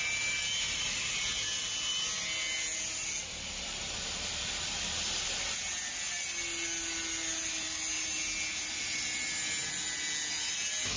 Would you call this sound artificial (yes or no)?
no